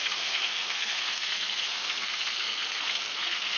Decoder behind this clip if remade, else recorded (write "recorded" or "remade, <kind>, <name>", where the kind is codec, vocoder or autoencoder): remade, codec, SNAC